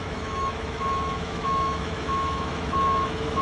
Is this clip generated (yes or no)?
yes